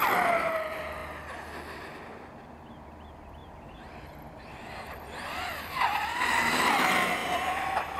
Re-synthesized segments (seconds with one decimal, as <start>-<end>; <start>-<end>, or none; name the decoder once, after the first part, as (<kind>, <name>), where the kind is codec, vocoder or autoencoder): 3.4-6.7 (vocoder, BigVGAN v2)